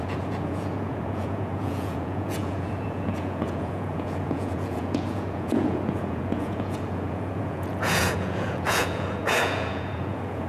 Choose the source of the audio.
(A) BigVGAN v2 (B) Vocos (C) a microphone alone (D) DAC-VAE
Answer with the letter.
B